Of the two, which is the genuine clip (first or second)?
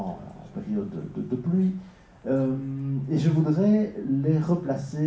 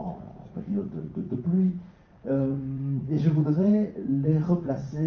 first